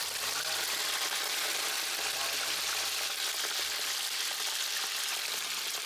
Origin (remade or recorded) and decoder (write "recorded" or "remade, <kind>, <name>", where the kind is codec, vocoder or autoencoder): recorded